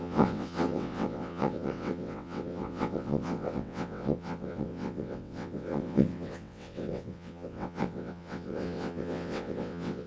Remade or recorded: remade